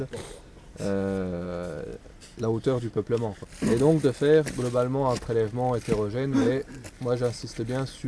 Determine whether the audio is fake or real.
real